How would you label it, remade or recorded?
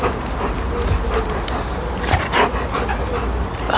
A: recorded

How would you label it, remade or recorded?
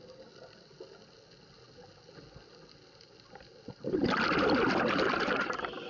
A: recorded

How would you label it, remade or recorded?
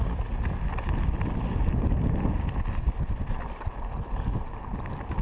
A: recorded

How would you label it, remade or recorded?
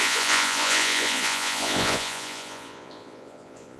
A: remade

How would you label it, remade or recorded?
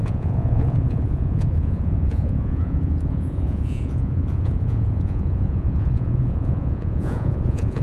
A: remade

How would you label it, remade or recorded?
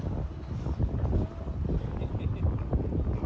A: recorded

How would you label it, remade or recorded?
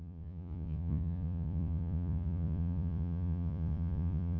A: remade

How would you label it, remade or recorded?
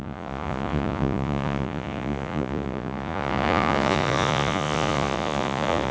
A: remade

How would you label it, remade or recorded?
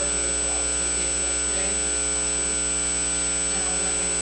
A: recorded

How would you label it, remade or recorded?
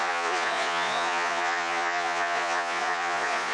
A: remade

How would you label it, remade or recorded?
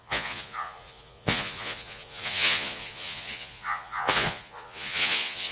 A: remade